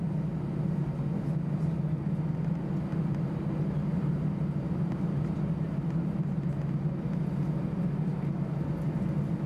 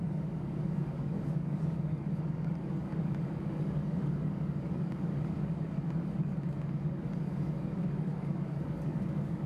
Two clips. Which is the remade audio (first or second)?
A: second